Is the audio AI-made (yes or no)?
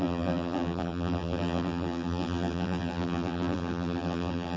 yes